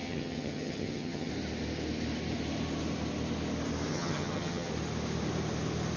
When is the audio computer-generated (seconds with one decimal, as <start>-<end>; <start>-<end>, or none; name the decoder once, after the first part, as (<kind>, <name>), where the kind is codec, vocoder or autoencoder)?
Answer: 0.0-1.3 (vocoder, HiFi-GAN); 3.9-4.7